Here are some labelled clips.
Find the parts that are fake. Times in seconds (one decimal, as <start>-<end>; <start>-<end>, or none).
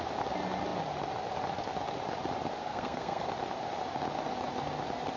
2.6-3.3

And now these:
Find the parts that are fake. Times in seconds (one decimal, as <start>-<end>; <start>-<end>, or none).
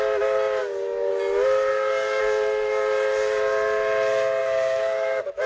0.6-1.1; 1.7-2.2; 4.4-5.5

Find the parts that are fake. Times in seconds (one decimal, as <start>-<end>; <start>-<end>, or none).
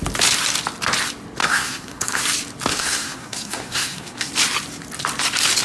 1.4-2.2; 2.7-4.3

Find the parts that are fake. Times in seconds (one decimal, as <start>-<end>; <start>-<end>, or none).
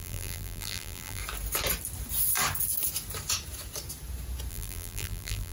0.0-1.2; 4.5-5.5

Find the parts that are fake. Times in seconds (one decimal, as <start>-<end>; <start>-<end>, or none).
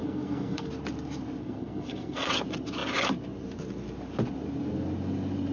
0.0-0.7; 1.4-2.3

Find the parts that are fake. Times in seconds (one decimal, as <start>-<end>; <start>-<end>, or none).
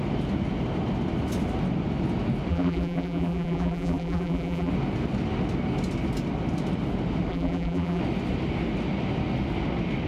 2.5-4.7; 7.3-8.0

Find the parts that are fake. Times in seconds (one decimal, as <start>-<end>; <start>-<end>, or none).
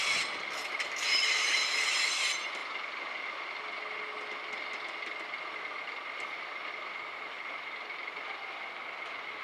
0.0-2.6; 7.3-9.4